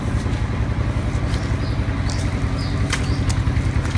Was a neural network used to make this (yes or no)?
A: no